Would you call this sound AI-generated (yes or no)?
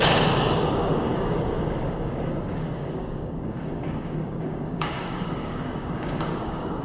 yes